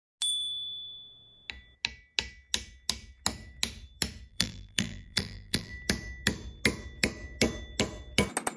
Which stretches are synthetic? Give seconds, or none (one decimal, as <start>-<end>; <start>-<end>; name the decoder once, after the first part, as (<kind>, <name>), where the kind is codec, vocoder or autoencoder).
4.3-5.7 (vocoder, BigVGAN v2)

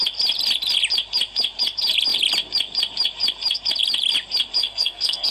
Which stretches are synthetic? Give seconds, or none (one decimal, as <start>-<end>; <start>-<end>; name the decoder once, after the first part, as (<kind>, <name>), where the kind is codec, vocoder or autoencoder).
4.6-5.3 (codec, SNAC)

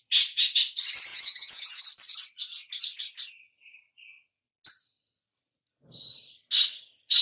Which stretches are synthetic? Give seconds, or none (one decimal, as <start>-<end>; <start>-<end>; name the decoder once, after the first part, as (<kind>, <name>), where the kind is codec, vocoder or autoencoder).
1.1-1.8 (vocoder, Vocos)

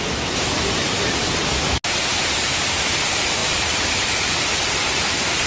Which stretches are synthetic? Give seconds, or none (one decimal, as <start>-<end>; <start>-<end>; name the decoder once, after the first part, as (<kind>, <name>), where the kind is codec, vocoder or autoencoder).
3.4-4.1 (vocoder, BigVGAN v2)

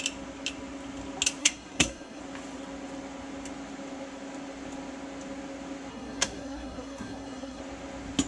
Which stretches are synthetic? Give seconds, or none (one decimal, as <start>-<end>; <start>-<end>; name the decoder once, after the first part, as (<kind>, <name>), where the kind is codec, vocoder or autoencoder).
1.4-2.2 (codec, SNAC); 5.9-7.6

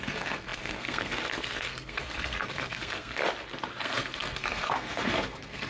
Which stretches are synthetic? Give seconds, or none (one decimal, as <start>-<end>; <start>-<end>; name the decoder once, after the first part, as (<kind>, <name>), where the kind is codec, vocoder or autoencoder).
0.0-3.2 (codec, SNAC); 3.8-5.7

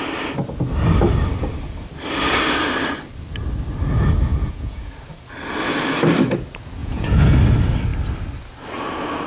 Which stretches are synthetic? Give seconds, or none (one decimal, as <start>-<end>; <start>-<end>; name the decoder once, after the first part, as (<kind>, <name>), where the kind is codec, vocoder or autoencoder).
4.3-4.9 (vocoder, Vocos); 6.8-7.4